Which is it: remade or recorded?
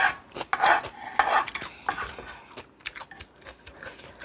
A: recorded